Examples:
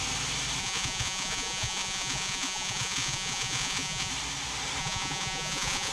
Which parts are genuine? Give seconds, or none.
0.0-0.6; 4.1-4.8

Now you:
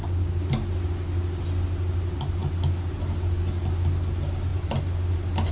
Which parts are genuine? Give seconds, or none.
0.0-5.5

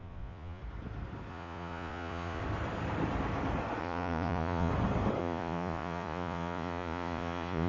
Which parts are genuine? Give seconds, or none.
0.6-1.3; 2.4-3.8; 4.7-5.2